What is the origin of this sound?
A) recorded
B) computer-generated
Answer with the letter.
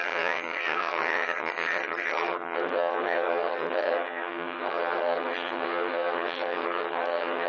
B